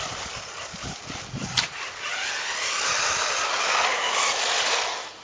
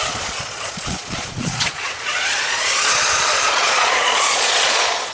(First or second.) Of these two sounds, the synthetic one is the second